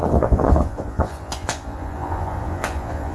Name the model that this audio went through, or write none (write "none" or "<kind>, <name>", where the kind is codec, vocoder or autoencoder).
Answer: vocoder, Vocos